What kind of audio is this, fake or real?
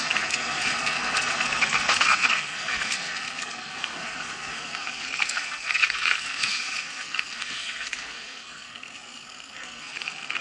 fake